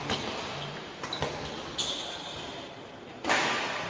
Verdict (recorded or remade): remade